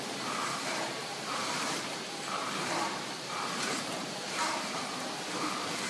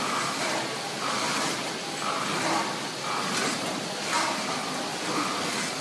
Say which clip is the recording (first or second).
second